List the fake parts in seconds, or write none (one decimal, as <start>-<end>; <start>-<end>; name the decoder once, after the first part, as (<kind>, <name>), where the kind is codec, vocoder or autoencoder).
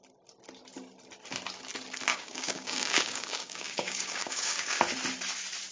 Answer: 2.1-4.8 (codec, DAC)